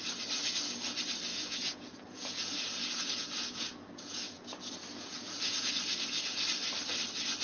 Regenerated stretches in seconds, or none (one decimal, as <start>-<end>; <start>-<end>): 1.3-5.7

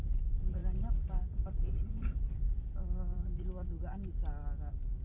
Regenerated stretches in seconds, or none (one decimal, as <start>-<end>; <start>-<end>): 0.0-5.0

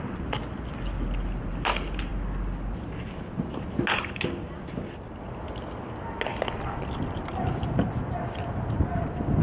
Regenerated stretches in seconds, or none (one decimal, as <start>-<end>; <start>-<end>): none

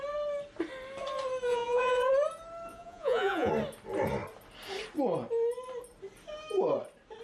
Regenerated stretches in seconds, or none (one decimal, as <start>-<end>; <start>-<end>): 1.5-2.1; 2.7-3.5

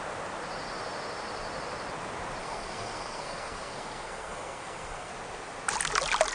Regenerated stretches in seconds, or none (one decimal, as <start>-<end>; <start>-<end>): 2.4-5.1

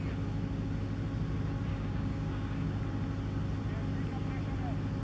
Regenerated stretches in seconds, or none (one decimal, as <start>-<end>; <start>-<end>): 1.7-2.8

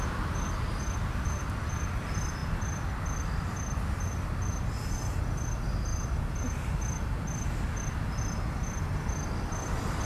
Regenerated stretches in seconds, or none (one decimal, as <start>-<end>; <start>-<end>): none